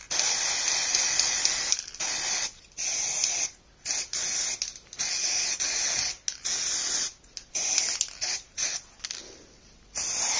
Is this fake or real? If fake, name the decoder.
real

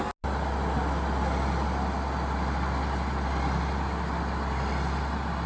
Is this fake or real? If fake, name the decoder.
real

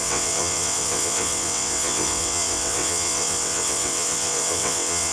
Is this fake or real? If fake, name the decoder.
fake, vocoder, WaveNeXt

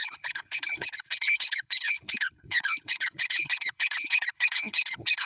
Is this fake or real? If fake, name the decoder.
fake, codec, HILCodec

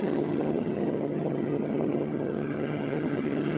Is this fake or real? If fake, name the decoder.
fake, vocoder, HiFi-GAN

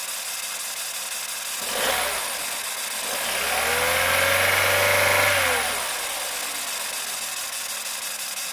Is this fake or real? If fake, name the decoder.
real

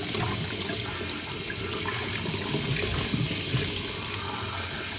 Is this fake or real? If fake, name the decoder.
real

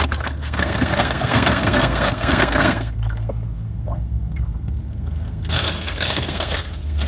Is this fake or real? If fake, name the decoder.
fake, codec, SNAC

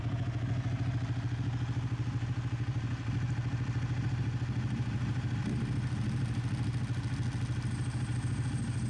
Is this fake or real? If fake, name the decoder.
real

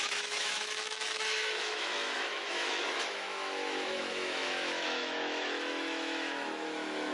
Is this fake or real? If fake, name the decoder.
fake, autoencoder, DAC-VAE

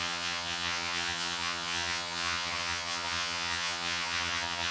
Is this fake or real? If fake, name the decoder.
fake, vocoder, HiFi-GAN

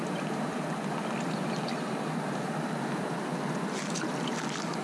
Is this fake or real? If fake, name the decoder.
real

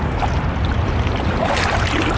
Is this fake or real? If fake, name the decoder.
real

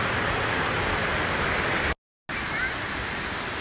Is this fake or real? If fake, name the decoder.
real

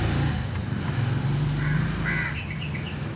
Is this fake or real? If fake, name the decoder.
real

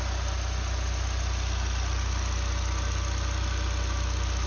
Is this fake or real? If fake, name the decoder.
real